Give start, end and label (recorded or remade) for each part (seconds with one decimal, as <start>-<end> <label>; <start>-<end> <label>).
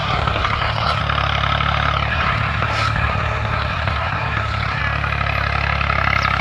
0.0-1.0 remade; 1.0-2.1 recorded; 2.1-4.8 remade; 4.8-6.4 recorded